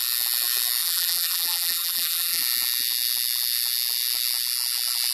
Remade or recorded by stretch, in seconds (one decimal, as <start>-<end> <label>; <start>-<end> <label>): 0.0-0.8 recorded; 0.8-2.4 remade; 2.4-5.1 recorded